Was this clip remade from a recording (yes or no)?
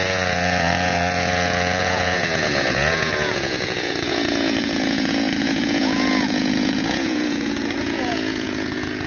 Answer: yes